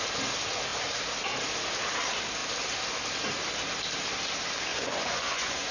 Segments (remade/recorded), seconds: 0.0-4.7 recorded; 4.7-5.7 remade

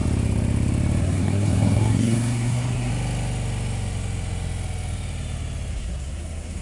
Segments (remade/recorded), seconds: 0.0-1.0 recorded; 1.0-2.9 remade; 2.9-5.7 recorded; 5.7-6.6 remade

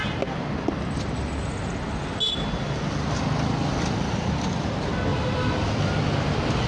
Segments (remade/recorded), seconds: 0.0-6.7 recorded

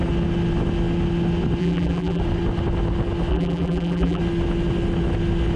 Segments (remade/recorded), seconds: 0.0-1.6 recorded; 1.6-2.2 remade; 2.2-3.3 recorded; 3.3-4.2 remade; 4.2-5.6 recorded